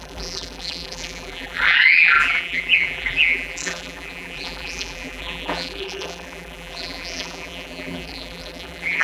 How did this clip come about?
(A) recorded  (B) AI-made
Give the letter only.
B